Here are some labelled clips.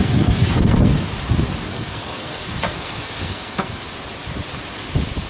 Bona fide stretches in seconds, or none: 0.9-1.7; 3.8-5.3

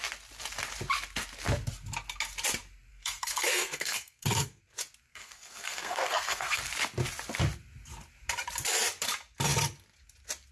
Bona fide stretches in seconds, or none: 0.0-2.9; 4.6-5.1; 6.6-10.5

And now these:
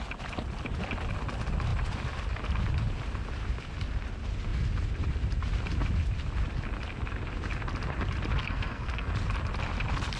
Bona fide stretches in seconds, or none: 0.0-8.4; 9.1-10.2